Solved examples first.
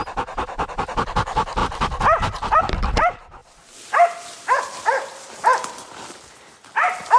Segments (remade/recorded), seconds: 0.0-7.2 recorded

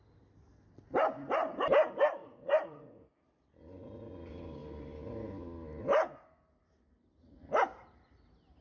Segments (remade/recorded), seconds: 0.0-2.2 recorded; 2.2-3.0 remade; 3.0-8.6 recorded

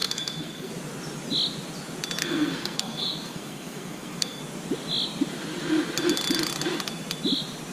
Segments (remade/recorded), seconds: 0.0-0.7 remade; 0.7-2.2 recorded; 2.2-4.4 remade; 4.4-7.7 recorded